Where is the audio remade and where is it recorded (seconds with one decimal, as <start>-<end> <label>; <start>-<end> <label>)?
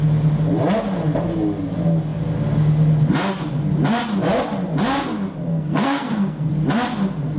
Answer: 0.0-5.5 recorded; 5.5-6.5 remade; 6.5-7.4 recorded